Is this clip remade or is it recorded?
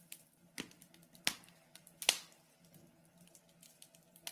recorded